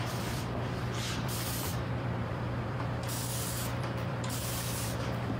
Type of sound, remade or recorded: remade